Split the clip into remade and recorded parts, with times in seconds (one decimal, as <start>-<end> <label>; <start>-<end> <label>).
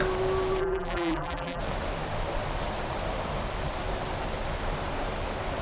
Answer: 0.0-0.6 recorded; 0.6-1.6 remade; 1.6-5.6 recorded